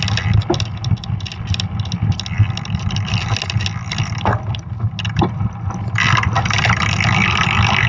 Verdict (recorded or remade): recorded